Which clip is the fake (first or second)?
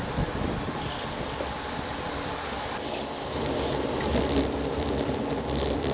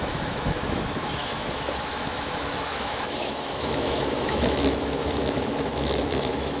second